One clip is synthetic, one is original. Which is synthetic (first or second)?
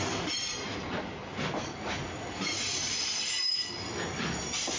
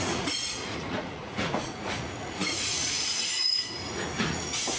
second